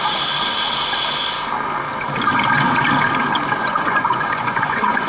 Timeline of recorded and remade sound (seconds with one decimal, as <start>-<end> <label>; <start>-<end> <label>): 0.0-3.6 recorded; 3.6-5.1 remade